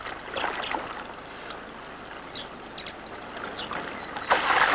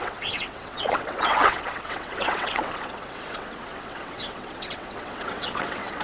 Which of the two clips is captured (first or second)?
first